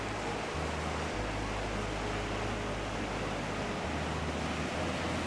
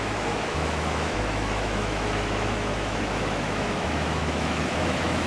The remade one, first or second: second